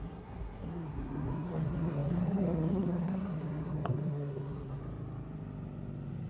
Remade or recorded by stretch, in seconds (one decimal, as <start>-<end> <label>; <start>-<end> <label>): 0.0-4.8 remade; 4.8-6.3 recorded